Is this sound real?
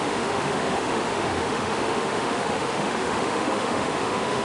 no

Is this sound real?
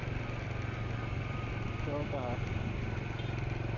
yes